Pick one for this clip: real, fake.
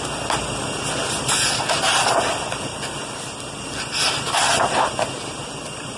real